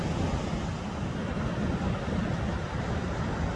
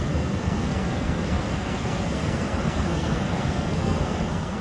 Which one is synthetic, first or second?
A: second